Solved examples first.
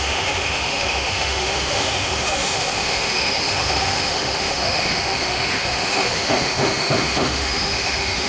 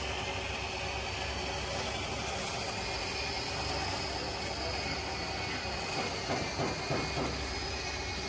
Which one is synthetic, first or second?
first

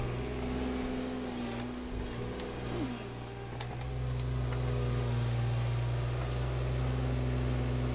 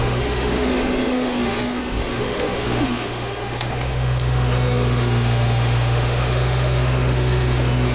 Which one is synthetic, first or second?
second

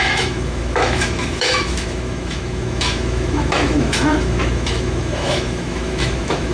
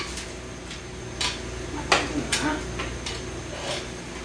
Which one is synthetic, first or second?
first